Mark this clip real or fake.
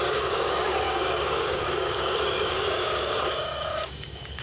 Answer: fake